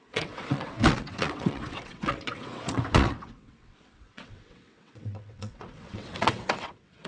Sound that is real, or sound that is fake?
fake